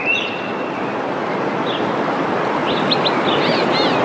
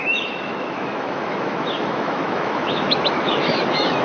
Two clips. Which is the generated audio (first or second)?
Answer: second